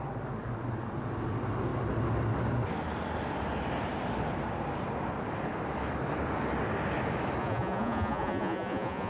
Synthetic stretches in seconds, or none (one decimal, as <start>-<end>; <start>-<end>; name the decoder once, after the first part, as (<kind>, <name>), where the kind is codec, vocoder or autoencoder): 7.4-9.1 (vocoder, Vocos)